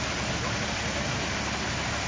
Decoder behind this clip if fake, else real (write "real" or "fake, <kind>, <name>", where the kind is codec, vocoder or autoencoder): real